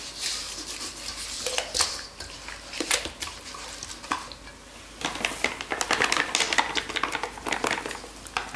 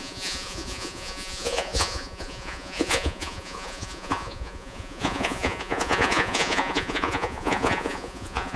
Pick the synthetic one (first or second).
second